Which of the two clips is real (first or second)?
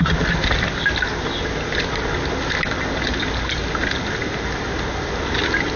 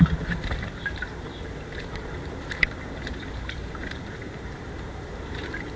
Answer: first